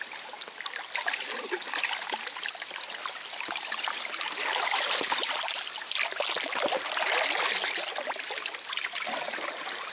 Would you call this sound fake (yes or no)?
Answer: no